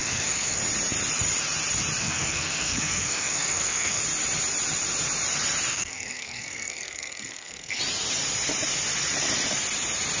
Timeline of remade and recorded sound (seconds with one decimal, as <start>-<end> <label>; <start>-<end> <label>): 0.0-0.6 remade; 0.6-2.0 recorded; 2.0-4.0 remade; 4.0-5.7 recorded; 5.7-7.8 remade; 7.8-10.2 recorded